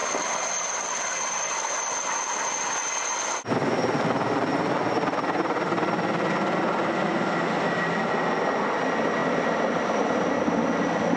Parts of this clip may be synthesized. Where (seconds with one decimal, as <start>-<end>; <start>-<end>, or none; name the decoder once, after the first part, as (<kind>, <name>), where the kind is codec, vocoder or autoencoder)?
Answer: none